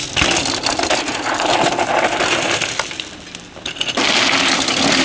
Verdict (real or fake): real